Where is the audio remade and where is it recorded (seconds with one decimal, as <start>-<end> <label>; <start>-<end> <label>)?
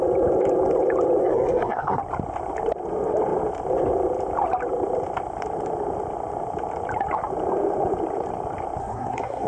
0.0-1.2 recorded; 1.2-2.0 remade; 2.0-8.8 recorded; 8.8-9.5 remade